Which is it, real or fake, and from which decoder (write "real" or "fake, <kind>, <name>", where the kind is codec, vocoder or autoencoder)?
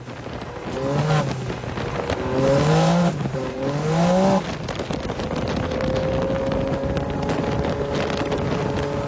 real